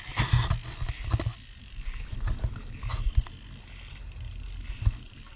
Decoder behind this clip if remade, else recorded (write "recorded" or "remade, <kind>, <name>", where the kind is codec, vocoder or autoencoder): recorded